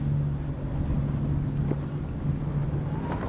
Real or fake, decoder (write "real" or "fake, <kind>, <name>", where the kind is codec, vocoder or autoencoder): real